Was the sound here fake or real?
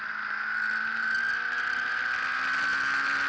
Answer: real